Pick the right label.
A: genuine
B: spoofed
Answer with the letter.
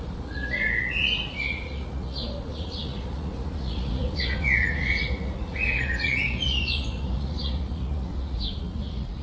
B